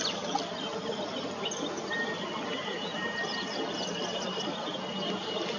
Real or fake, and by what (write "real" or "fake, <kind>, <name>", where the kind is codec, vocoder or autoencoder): real